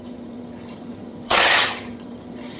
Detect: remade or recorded remade